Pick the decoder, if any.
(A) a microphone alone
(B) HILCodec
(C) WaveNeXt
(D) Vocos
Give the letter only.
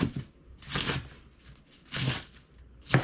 A